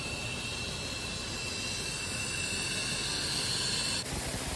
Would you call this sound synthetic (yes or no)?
no